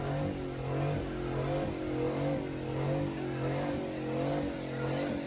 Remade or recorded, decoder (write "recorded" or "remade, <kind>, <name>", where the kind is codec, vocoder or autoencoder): recorded